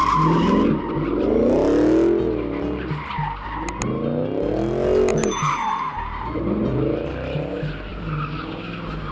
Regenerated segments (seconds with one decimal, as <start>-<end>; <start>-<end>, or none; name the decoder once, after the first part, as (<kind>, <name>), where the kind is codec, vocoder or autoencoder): 0.0-0.8 (vocoder, BigVGAN v2); 5.1-6.7